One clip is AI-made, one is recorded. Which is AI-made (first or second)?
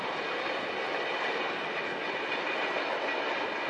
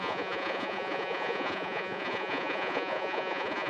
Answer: second